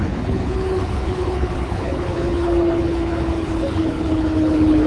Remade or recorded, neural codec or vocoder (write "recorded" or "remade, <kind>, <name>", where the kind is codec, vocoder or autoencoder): remade, codec, HILCodec